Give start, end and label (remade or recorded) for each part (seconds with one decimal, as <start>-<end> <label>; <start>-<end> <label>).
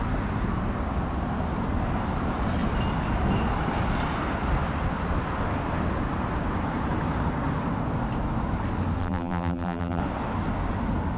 0.0-9.0 recorded; 9.0-10.0 remade; 10.0-11.2 recorded